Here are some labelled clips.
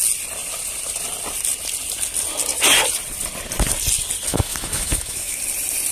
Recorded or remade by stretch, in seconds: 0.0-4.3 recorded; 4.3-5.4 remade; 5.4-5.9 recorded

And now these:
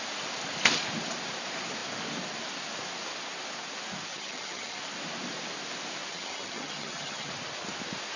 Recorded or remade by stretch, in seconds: 0.0-4.1 recorded; 4.1-4.8 remade; 4.8-6.1 recorded; 6.1-7.3 remade; 7.3-8.2 recorded

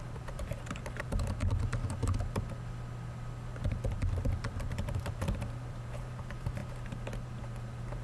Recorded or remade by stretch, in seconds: 0.0-1.4 remade; 1.4-3.7 recorded; 3.7-8.0 remade

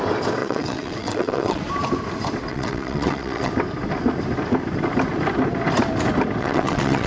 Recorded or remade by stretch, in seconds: 0.0-0.4 recorded; 0.4-1.6 remade; 1.6-2.5 recorded; 2.5-3.5 remade; 3.5-6.4 recorded; 6.4-7.1 remade

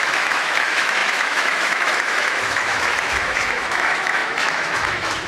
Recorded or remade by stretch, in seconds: 0.0-5.3 remade